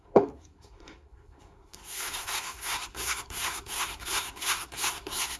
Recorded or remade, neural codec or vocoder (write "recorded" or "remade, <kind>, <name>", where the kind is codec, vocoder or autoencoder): remade, codec, SNAC